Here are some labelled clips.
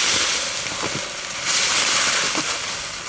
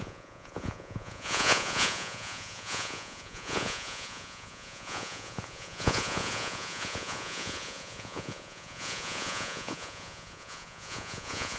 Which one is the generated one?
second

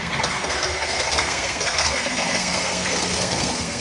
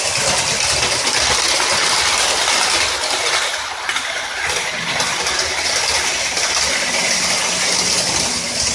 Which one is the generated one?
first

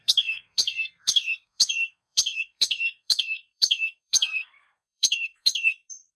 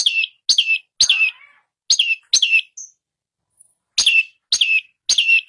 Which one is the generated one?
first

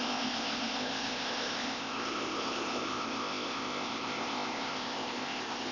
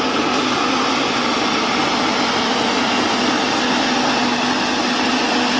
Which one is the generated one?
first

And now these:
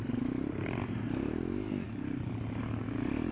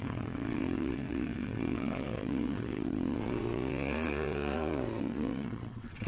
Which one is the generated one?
second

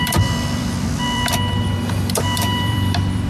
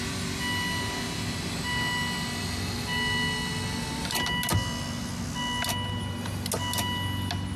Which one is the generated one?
first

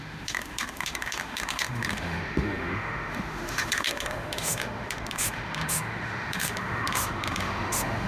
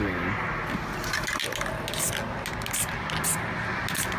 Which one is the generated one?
first